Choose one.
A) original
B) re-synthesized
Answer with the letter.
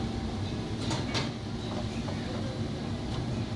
A